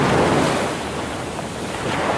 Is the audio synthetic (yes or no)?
no